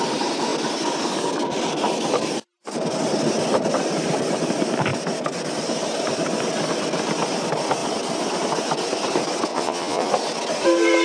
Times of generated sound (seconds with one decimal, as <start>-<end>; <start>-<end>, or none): 9.5-10.1

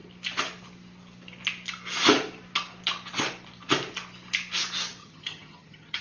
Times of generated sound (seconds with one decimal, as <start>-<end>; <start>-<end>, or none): 5.0-6.0

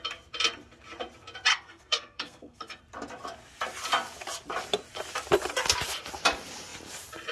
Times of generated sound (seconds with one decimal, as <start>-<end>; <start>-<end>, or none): 1.5-2.8

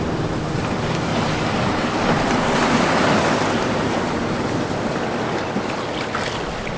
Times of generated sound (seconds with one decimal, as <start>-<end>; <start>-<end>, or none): 0.0-1.1; 1.7-6.8

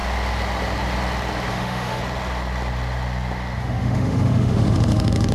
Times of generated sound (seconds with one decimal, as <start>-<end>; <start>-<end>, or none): 1.5-2.0; 3.6-5.3

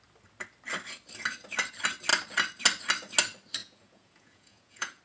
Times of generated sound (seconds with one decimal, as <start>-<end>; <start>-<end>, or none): 3.6-5.0